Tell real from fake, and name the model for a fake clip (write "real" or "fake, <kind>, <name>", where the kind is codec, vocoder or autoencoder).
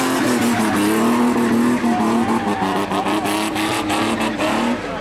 real